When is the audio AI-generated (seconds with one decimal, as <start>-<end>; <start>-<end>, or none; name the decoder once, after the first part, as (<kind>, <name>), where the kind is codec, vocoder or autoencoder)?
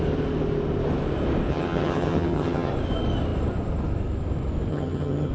1.5-2.7 (vocoder, HiFi-GAN); 4.7-5.3